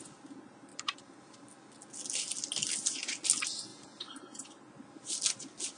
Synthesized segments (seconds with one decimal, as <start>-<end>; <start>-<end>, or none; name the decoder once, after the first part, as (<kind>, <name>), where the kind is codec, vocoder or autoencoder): 0.7-1.4 (vocoder, BigVGAN v2); 3.7-4.6